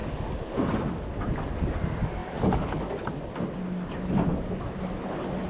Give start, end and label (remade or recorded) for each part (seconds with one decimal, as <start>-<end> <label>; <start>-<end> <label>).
0.0-5.5 recorded